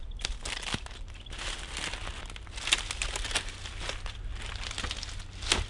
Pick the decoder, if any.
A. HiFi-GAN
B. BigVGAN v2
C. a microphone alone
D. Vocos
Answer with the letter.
C